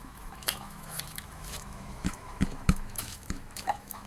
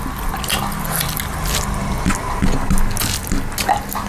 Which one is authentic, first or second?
second